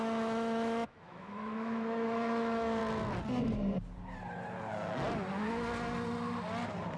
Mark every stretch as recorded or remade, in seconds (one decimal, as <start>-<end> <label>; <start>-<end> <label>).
0.0-2.8 remade; 2.8-7.0 recorded